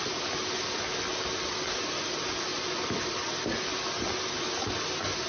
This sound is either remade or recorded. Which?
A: recorded